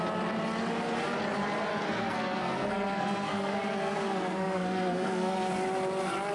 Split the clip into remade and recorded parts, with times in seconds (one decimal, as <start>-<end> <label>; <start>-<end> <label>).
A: 0.0-1.7 recorded; 1.7-5.5 remade; 5.5-6.3 recorded